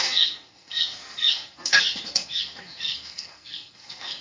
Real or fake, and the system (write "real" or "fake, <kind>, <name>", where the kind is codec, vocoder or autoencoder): fake, codec, SNAC